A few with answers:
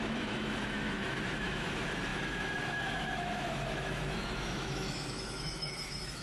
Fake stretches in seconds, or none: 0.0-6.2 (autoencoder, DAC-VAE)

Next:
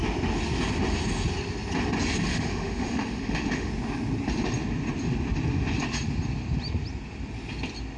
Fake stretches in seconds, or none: 2.3-3.7 (autoencoder, DAC-VAE)

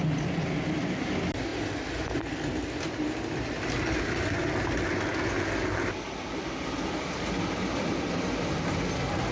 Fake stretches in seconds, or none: none

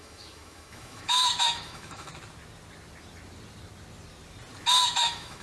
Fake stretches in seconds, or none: 0.0-2.1 (autoencoder, DAC-VAE); 4.8-5.4

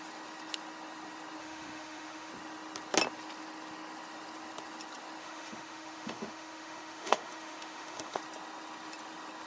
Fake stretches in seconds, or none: 1.4-2.3 (autoencoder, DAC-VAE); 5.2-8.2

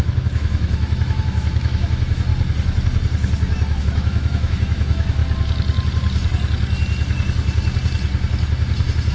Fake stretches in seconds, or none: 0.0-2.3 (autoencoder, DAC-VAE); 3.8-5.2

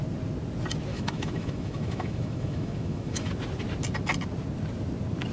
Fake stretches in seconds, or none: 0.9-3.3 (autoencoder, DAC-VAE)